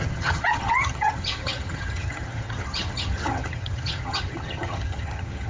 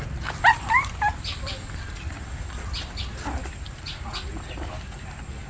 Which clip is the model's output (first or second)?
first